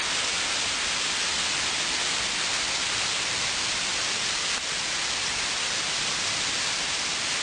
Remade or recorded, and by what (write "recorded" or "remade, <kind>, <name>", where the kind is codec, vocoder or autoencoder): recorded